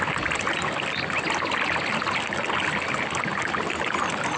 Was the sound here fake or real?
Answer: real